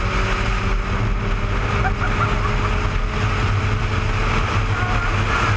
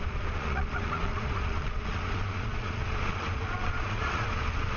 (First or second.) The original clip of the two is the first